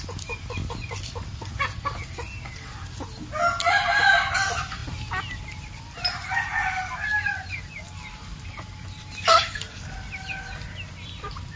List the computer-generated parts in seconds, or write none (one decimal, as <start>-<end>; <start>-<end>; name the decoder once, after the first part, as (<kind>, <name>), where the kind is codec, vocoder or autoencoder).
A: none